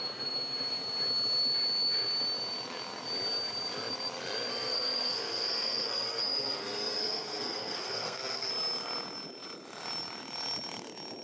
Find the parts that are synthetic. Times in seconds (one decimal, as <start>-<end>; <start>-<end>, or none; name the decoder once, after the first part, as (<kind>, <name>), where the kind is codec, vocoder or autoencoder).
4.5-8.5 (codec, SNAC)